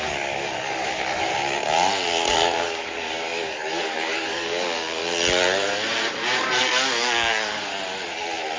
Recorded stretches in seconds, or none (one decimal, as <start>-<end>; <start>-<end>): 1.3-2.3; 5.0-6.4; 7.7-8.6